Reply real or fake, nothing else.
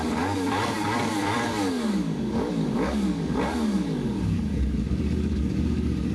fake